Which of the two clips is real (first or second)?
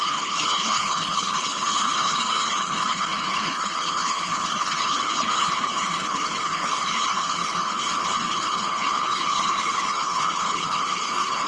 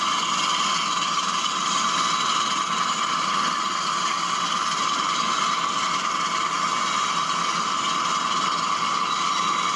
second